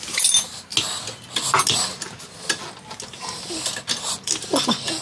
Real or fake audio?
real